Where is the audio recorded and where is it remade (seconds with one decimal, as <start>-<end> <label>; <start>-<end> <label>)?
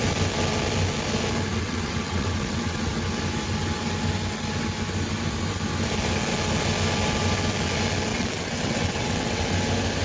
0.0-1.5 recorded; 1.5-2.9 remade; 2.9-8.1 recorded; 8.1-9.4 remade; 9.4-10.0 recorded